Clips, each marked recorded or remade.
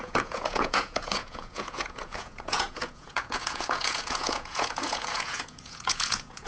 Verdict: remade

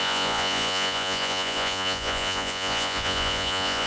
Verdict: remade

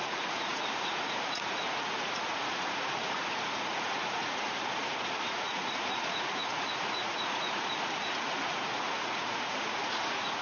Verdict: remade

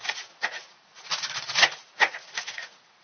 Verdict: remade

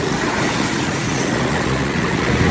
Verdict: remade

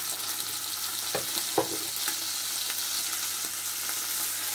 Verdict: recorded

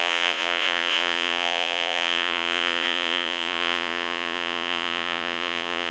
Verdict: remade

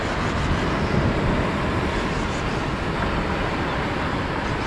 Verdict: recorded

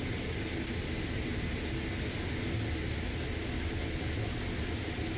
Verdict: recorded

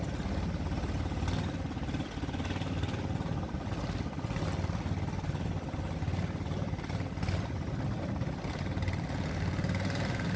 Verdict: recorded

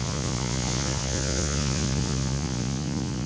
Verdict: remade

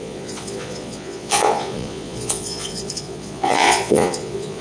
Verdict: remade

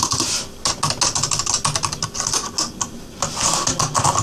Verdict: recorded